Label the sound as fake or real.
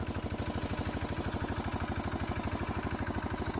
real